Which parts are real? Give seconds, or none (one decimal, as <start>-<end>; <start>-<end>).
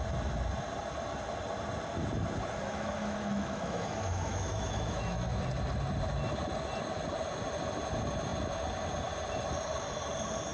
0.0-2.6; 5.4-10.5